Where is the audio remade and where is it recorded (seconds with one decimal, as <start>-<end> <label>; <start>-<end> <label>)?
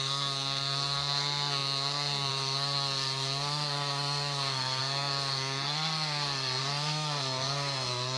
0.0-8.2 remade